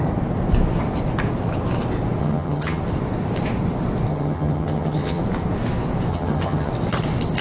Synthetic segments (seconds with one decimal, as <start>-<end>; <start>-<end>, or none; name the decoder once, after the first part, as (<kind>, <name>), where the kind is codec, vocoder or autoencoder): 2.2-2.8 (vocoder, HiFi-GAN); 4.1-5.2; 6.1-6.7